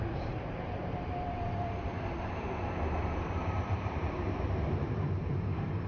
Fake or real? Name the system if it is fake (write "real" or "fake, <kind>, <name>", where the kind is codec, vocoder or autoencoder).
fake, vocoder, BigVGAN v2